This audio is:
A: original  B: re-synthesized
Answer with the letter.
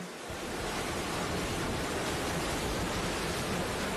A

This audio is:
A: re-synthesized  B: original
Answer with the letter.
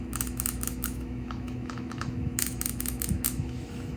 A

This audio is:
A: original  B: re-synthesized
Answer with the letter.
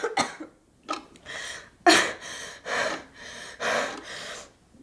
A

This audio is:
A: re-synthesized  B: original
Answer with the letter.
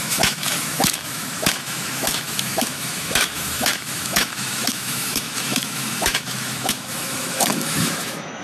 A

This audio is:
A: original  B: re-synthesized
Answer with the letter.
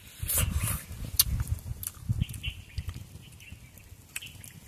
A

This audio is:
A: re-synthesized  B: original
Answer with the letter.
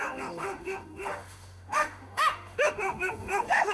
A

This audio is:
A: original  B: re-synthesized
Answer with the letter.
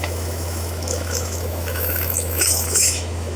B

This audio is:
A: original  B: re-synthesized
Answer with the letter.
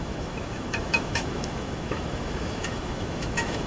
B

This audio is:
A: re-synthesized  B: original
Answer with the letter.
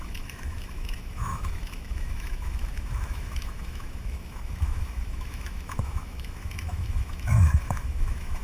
A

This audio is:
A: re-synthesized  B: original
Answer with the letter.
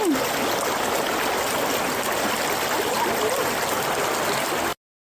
B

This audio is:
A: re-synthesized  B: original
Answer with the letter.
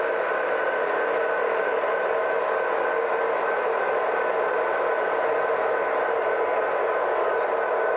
B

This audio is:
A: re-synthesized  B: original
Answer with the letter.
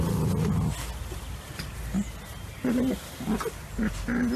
B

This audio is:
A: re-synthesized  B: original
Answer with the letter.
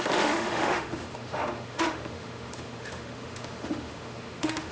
A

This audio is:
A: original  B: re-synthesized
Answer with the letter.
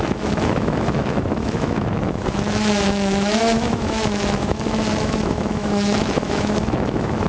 B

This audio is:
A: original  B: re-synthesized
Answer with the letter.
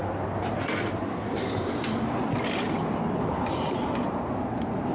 A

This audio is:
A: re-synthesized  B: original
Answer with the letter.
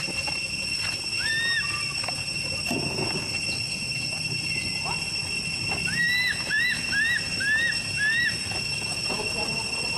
B